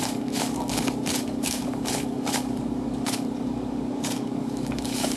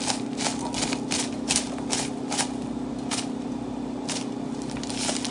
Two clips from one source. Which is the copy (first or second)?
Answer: first